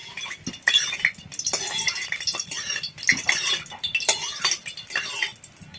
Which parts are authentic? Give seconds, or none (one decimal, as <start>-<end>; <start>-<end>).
0.0-5.8